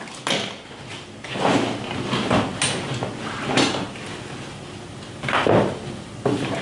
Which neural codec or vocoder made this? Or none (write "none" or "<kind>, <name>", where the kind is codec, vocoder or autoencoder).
none